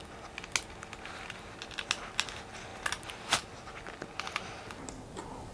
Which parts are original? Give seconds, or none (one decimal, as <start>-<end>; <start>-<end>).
0.0-5.5